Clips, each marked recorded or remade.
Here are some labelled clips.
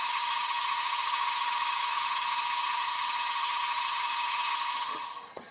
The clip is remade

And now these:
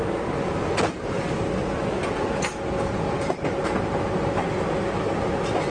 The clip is recorded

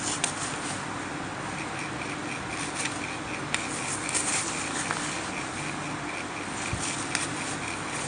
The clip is recorded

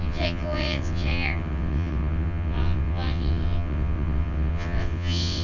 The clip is remade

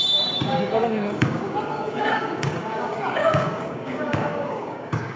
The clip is remade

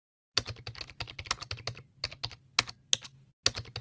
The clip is recorded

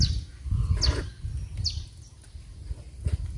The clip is recorded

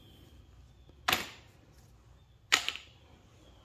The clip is recorded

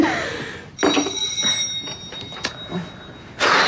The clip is recorded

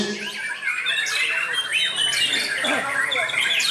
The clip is recorded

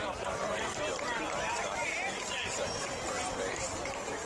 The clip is remade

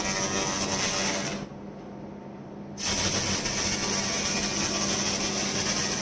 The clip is recorded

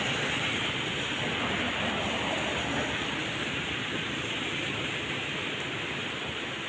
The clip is recorded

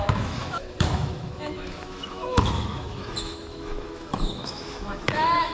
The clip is remade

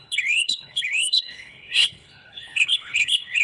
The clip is remade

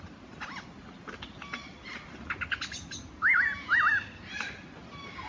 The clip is recorded